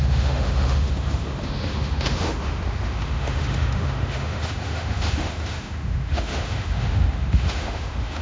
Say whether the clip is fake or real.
fake